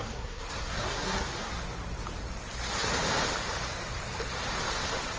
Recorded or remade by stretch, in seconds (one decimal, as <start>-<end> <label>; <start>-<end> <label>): 0.0-1.5 remade; 1.5-5.2 recorded